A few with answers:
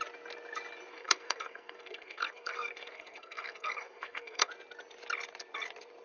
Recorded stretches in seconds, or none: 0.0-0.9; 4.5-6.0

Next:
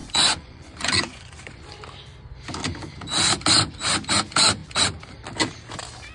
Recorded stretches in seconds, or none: 1.7-6.1